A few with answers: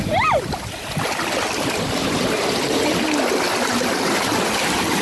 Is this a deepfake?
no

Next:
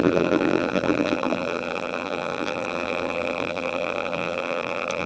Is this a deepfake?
yes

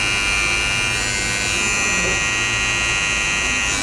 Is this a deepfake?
no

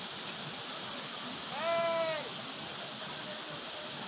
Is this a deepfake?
no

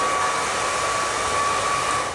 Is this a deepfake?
no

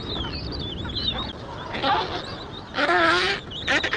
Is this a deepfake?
no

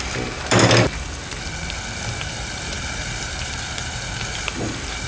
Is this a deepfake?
no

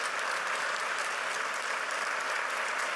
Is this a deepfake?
yes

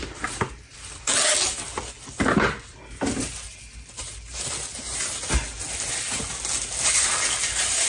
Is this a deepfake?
no